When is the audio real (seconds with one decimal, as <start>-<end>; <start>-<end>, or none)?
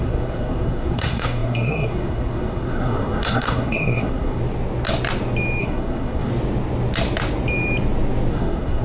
4.4-5.6; 6.3-8.3